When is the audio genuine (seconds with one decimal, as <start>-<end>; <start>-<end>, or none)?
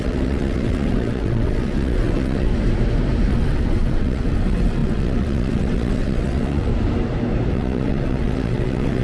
2.5-3.3; 6.7-7.5